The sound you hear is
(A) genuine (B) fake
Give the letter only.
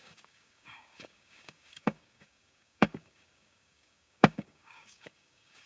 B